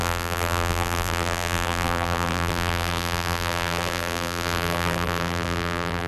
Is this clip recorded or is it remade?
remade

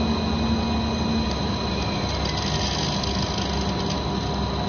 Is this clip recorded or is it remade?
recorded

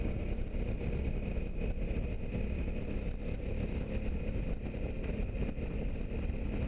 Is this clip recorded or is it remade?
recorded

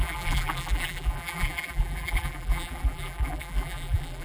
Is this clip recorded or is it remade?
remade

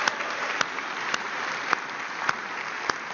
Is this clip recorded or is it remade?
remade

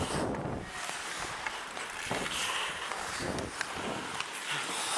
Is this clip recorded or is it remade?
recorded